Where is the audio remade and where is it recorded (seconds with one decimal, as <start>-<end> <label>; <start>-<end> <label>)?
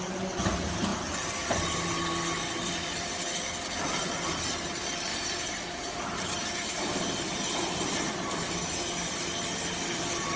0.0-5.1 recorded; 5.1-6.9 remade; 6.9-10.4 recorded